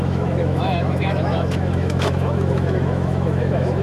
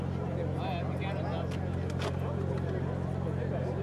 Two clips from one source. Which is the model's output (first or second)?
first